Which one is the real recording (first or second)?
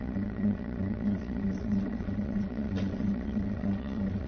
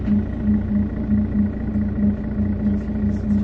second